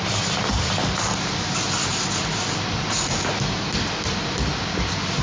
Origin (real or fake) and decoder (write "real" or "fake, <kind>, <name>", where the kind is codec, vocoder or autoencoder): real